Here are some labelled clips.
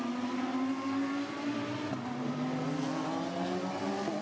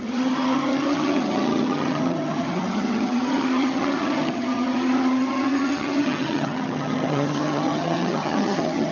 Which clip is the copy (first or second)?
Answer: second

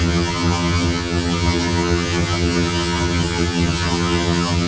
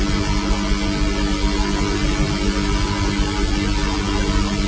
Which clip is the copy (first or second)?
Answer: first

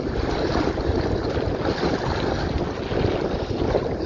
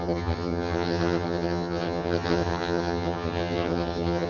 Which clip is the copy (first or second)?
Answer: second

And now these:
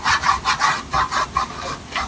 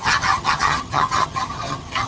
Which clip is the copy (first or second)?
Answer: second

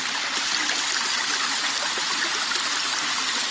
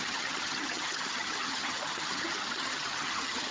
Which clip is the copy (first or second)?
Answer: second